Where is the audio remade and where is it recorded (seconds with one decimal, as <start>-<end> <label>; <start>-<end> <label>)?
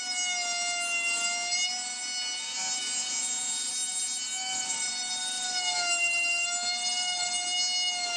0.0-2.8 recorded; 2.8-3.7 remade; 3.7-8.2 recorded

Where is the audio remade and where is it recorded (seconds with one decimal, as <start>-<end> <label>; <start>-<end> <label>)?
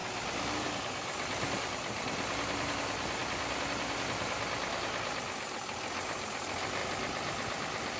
0.0-3.2 recorded; 3.2-3.8 remade; 3.8-6.8 recorded; 6.8-8.0 remade